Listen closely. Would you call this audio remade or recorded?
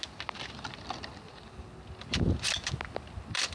recorded